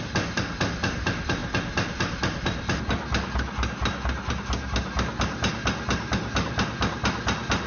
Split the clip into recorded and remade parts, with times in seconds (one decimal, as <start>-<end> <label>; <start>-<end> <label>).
0.0-7.7 recorded